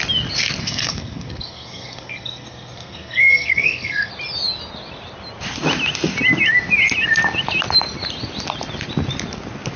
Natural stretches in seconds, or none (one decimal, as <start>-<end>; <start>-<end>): 0.0-0.6; 4.1-9.8